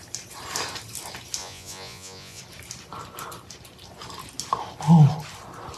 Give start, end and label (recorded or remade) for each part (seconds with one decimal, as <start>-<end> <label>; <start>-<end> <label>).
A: 0.0-1.4 recorded; 1.4-2.4 remade; 2.4-5.8 recorded